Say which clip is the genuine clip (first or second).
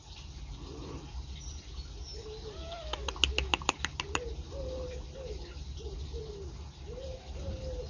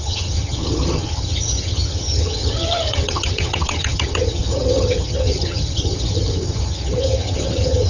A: first